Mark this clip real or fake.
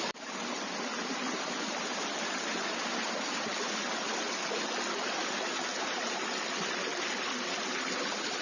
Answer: real